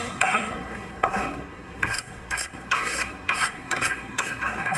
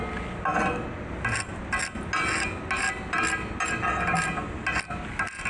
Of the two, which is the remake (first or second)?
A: first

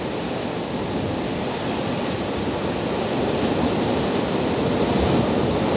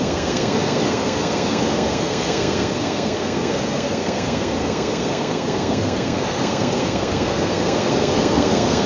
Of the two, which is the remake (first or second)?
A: second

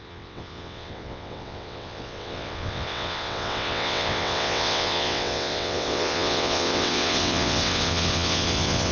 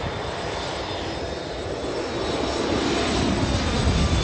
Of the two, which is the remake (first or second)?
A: first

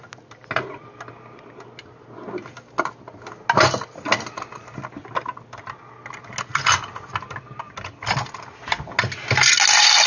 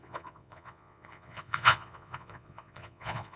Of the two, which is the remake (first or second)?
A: second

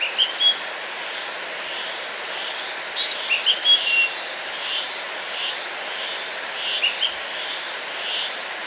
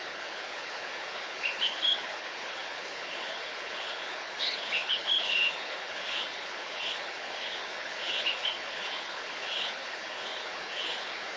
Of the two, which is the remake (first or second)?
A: second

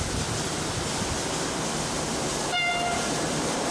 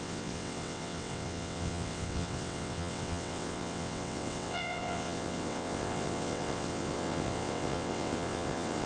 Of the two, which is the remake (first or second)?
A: second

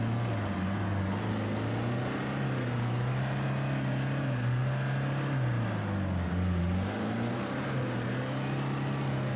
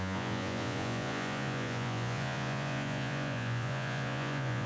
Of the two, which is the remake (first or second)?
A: second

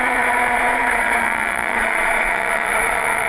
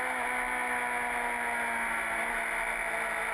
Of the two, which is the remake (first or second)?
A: first